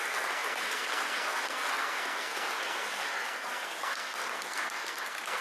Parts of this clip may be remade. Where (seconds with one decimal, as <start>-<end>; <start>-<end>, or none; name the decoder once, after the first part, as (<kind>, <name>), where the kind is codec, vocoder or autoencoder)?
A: 0.0-5.4 (codec, SNAC)